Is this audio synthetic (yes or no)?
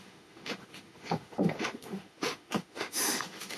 yes